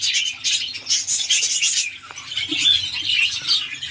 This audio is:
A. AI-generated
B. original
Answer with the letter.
B